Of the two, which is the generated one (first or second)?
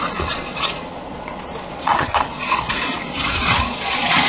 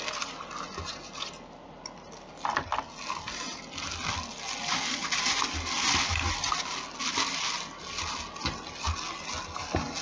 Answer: first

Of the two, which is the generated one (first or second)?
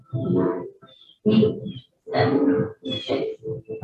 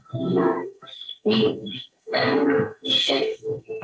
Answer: second